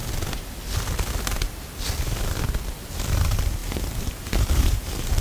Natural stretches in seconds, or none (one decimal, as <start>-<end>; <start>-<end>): 0.0-3.1